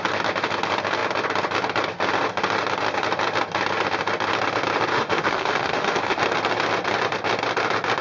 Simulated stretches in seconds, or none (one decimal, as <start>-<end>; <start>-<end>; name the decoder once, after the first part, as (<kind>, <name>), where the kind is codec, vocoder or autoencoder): 4.9-6.2 (autoencoder, DAC-VAE)